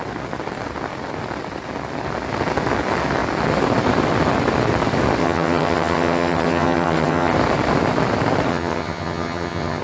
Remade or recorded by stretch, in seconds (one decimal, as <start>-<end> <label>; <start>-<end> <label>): 0.0-5.2 recorded; 5.2-7.3 remade; 7.3-8.5 recorded; 8.5-9.8 remade